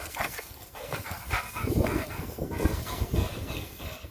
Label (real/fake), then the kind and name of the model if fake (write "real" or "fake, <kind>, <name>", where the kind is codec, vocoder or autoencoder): fake, codec, SNAC